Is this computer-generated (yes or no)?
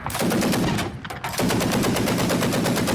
no